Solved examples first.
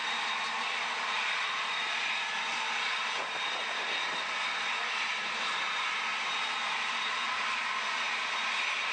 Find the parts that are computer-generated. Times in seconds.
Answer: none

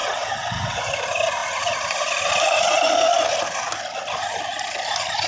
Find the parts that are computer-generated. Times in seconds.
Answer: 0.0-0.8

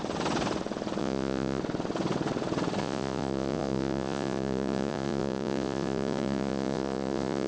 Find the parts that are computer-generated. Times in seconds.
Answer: 1.0-1.6; 2.8-7.5

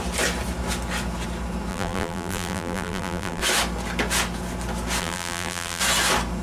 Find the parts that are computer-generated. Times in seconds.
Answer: 1.7-3.4; 5.0-5.8

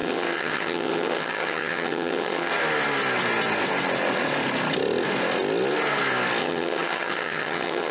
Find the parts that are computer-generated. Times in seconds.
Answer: 0.0-2.5; 6.4-7.9

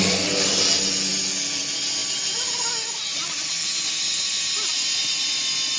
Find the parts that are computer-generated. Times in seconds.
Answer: none